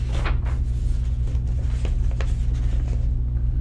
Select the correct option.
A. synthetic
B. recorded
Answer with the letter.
B